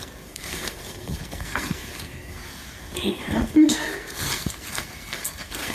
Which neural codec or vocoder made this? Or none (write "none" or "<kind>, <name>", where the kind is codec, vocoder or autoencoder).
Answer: codec, SNAC